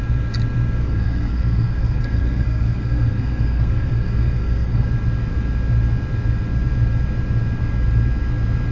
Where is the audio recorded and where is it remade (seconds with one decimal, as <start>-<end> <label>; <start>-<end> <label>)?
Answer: 0.0-0.8 recorded; 0.8-4.9 remade; 4.9-8.7 recorded